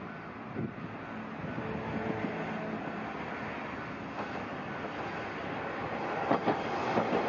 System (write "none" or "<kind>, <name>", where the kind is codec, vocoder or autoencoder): none